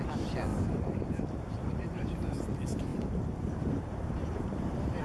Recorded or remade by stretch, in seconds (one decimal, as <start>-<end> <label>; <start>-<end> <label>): 0.0-0.5 recorded; 0.5-2.5 remade; 2.5-2.9 recorded; 2.9-5.0 remade